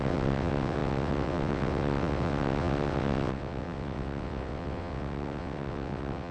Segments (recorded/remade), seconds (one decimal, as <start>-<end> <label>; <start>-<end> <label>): 0.0-6.3 remade